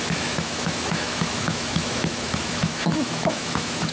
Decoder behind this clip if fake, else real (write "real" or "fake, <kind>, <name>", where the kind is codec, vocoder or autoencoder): fake, autoencoder, DAC-VAE